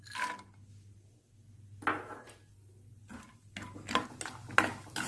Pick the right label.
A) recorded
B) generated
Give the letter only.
A